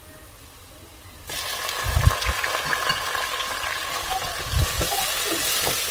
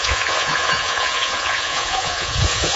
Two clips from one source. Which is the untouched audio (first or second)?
first